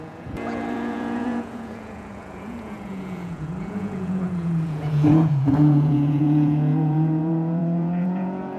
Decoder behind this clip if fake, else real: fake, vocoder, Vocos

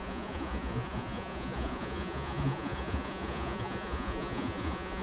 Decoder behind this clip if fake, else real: fake, vocoder, Vocos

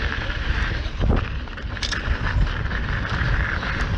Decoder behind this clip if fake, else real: real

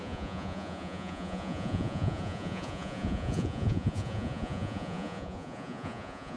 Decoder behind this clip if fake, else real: fake, vocoder, Vocos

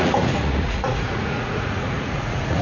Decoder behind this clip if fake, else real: fake, vocoder, Vocos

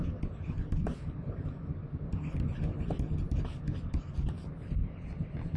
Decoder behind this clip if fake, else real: real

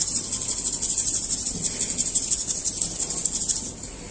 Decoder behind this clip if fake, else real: real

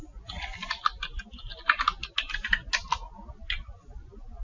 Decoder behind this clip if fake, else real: real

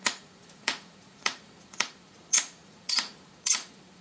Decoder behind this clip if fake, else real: fake, vocoder, Vocos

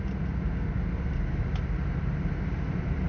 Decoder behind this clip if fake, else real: real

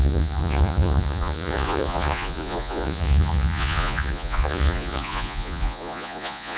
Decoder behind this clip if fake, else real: fake, vocoder, Vocos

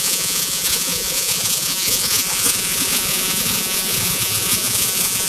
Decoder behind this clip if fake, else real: fake, vocoder, Vocos